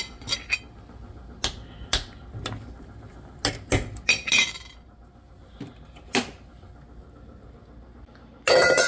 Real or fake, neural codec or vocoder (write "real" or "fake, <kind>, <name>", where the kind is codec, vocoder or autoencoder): real